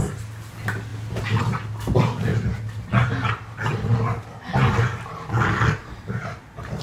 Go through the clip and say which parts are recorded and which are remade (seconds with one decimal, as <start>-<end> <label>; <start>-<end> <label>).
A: 0.0-6.8 recorded